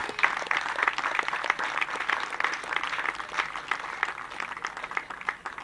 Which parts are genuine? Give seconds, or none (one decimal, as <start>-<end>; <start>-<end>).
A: 0.0-5.6